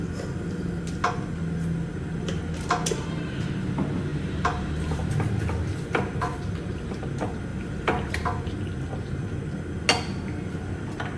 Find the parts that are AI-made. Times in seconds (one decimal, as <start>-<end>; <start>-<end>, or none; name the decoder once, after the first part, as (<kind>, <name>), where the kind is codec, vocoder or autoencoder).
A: 4.1-5.1 (vocoder, BigVGAN v2); 7.5-8.1